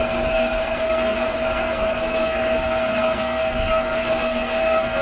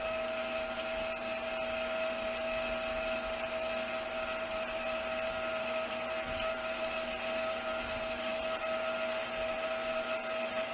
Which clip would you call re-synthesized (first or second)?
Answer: first